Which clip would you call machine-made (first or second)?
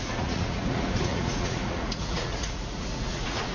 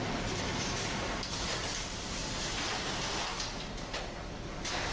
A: first